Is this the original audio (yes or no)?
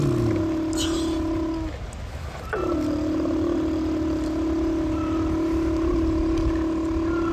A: yes